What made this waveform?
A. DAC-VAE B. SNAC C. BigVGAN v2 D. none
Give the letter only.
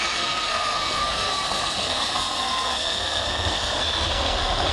B